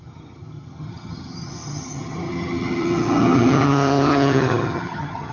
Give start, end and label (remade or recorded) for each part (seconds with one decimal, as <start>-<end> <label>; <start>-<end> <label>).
0.0-5.3 remade